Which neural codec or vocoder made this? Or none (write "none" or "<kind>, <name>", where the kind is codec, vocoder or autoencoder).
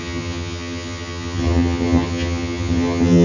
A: vocoder, HiFi-GAN